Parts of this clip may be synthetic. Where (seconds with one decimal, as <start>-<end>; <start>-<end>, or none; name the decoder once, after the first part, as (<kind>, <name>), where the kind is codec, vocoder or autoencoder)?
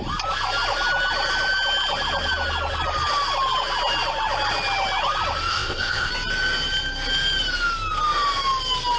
5.5-6.1 (codec, ZipCodec)